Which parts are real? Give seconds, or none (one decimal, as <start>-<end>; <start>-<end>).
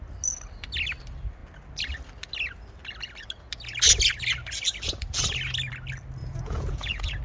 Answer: 0.0-6.2